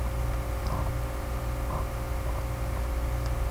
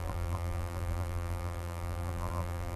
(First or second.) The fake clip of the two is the second